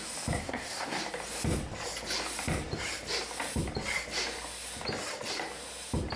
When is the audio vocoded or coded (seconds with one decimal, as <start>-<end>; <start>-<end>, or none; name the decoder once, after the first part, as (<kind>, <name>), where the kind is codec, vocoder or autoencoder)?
0.4-1.0 (codec, SNAC)